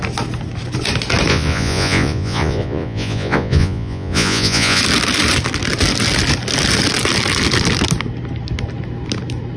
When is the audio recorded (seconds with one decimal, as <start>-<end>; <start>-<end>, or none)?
0.0-1.3; 4.8-9.6